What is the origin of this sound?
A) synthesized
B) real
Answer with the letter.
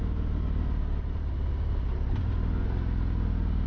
B